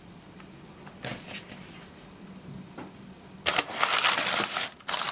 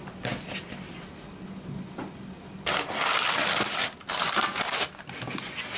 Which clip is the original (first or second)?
second